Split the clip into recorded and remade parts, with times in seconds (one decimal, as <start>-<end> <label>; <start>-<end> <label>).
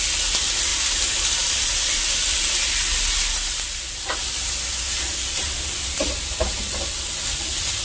0.0-0.7 recorded; 0.7-1.2 remade; 1.2-7.8 recorded